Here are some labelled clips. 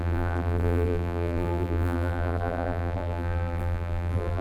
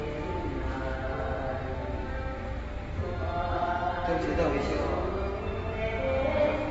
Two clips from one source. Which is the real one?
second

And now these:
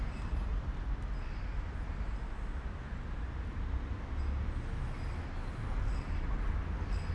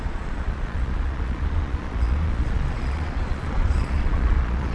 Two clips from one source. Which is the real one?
first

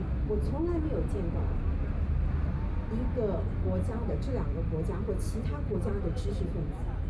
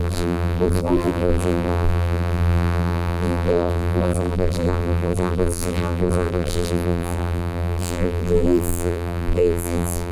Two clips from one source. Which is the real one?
first